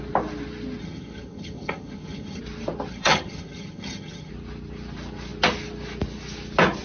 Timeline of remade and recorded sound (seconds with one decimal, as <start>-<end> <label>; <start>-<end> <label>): 0.0-0.8 recorded; 0.8-2.4 remade; 2.4-2.9 recorded; 2.9-4.3 remade; 4.3-6.8 recorded